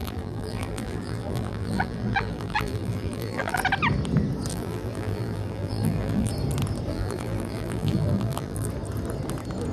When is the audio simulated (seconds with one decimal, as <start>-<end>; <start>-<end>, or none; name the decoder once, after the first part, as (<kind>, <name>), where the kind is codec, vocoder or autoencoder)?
0.0-3.6 (vocoder, BigVGAN v2); 4.5-6.3; 6.9-8.7